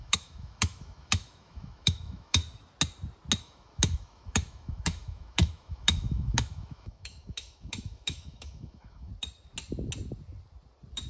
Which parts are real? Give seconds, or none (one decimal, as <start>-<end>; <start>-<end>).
2.4-3.4; 9.1-11.1